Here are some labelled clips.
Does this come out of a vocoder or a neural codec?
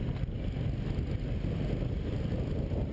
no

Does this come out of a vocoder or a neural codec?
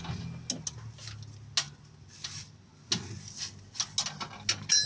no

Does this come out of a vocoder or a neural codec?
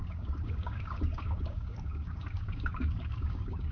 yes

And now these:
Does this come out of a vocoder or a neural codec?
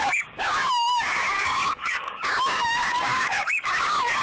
yes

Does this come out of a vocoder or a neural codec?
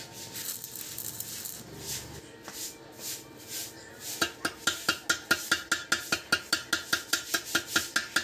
no